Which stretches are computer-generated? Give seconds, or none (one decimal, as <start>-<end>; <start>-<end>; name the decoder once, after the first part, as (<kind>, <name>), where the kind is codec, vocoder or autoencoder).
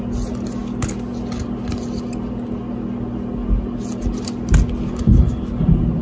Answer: none